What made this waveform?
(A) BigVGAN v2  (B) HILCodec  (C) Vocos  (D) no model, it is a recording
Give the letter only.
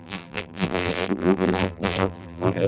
A